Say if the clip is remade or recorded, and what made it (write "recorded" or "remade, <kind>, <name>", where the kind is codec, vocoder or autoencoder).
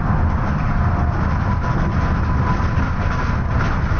recorded